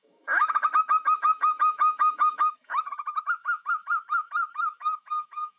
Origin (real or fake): fake